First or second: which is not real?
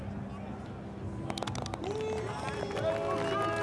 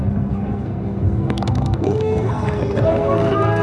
second